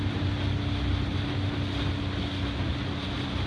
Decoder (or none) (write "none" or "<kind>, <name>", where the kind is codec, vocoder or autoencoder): none